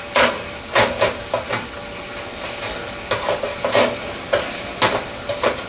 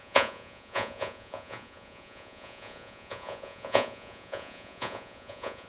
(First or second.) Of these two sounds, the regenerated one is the second